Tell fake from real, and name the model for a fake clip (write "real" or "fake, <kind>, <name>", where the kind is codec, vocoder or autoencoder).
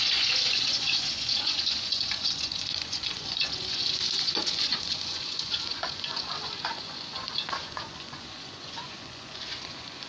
fake, vocoder, Vocos